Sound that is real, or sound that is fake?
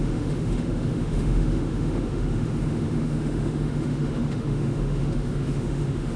fake